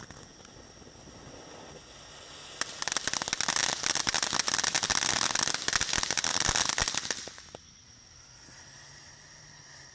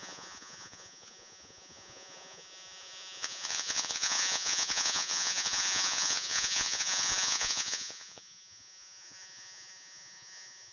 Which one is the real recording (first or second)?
first